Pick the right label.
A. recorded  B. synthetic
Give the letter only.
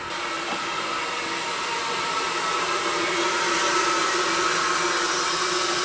A